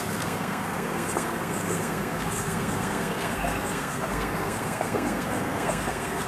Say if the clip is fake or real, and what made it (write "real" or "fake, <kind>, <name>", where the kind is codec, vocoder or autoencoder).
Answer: fake, codec, SNAC